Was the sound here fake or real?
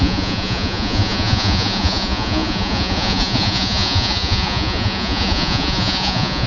fake